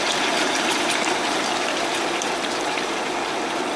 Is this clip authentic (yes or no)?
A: no